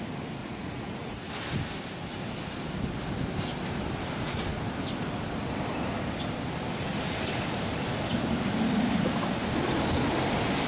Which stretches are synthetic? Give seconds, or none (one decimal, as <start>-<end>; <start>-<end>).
0.4-1.3